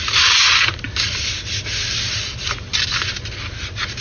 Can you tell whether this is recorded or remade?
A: recorded